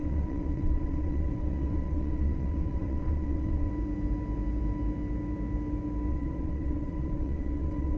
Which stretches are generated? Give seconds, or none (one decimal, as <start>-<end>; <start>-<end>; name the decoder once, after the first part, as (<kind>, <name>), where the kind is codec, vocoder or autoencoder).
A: 0.0-3.7 (vocoder, WaveNeXt); 6.1-8.0